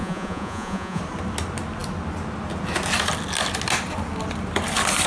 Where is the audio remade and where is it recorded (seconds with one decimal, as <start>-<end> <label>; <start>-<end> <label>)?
0.0-1.0 remade; 1.0-5.1 recorded